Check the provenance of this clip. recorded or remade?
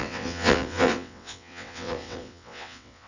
remade